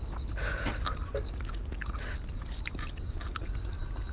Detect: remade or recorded recorded